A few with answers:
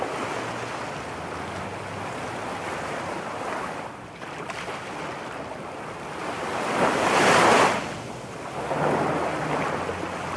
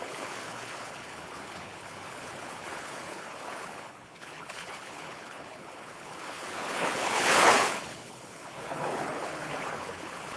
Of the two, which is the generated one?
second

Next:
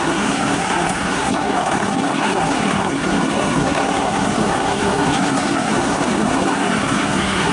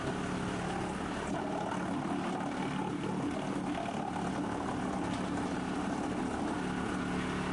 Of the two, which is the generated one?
first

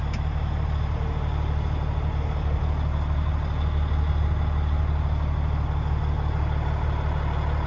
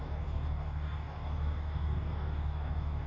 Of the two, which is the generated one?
second